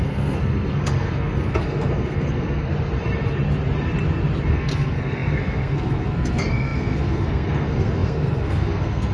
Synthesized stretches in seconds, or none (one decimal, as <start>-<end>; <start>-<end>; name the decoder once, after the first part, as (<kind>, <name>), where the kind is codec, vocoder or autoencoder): 0.0-2.7 (codec, SNAC); 4.5-9.1